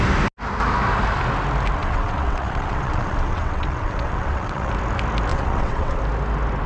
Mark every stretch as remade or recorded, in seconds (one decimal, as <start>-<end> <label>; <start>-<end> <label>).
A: 0.0-1.8 recorded; 1.8-4.7 remade; 4.7-5.3 recorded; 5.3-6.0 remade; 6.0-6.7 recorded